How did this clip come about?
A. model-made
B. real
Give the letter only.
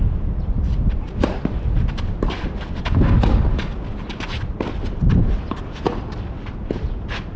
B